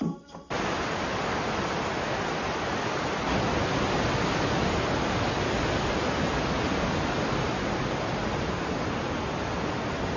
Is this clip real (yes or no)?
yes